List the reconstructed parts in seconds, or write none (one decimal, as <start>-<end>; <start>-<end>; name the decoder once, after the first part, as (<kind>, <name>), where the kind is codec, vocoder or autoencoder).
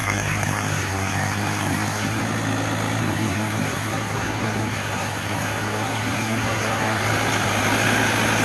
0.0-2.2 (codec, SNAC); 3.0-7.0